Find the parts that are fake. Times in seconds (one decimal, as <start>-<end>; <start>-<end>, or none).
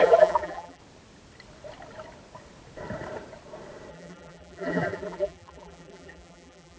0.0-0.8; 3.9-6.8